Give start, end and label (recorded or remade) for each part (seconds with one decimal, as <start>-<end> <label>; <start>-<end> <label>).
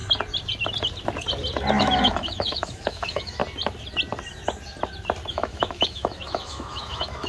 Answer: 0.0-1.8 recorded; 1.8-3.4 remade; 3.4-5.3 recorded; 5.3-7.3 remade